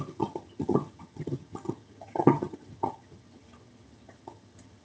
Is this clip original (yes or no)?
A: no